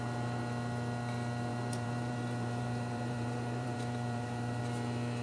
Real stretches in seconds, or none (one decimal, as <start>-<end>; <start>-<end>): 0.0-1.5; 4.6-5.2